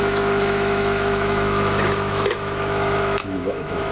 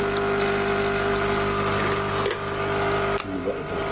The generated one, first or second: first